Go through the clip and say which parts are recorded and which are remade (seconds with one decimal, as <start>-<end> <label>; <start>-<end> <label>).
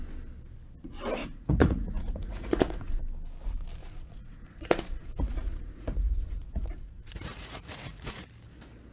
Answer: 0.0-1.2 recorded; 1.2-3.0 remade; 3.0-3.8 recorded; 3.8-8.2 remade; 8.2-8.9 recorded